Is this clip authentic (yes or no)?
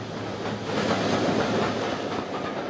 yes